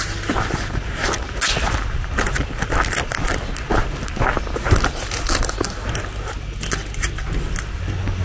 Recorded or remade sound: recorded